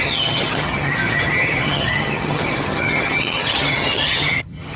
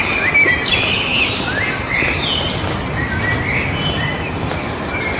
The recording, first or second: second